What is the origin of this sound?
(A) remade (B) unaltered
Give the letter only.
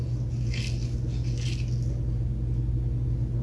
B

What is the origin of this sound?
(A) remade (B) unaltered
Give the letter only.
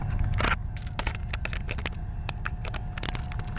B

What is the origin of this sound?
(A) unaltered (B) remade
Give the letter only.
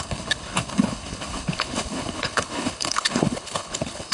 B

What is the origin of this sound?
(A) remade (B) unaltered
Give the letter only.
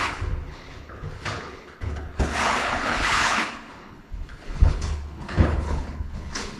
A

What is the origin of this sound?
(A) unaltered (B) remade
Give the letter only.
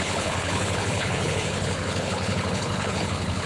B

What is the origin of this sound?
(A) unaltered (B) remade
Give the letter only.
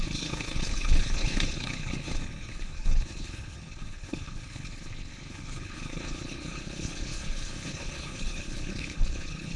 B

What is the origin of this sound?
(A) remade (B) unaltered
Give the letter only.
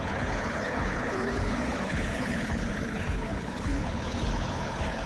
A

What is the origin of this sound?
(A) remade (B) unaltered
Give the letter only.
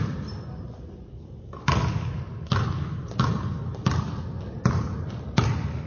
B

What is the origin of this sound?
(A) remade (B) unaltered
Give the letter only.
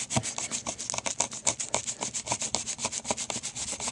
B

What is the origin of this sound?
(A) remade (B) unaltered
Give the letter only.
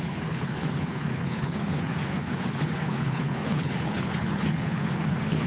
A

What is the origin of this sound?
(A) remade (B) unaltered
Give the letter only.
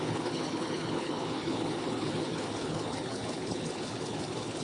A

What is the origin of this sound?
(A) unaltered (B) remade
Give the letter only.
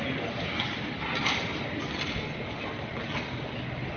A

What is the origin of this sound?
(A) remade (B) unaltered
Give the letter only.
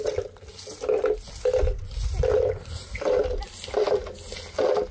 B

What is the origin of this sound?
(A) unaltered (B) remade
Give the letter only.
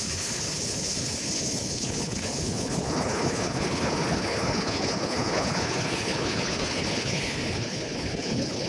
B